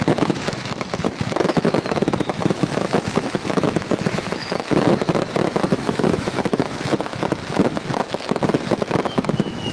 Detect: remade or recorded remade